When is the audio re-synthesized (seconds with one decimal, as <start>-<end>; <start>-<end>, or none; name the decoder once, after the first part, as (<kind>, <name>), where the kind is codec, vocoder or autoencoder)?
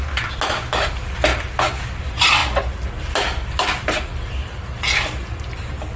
none